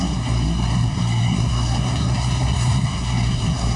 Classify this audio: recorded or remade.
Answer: remade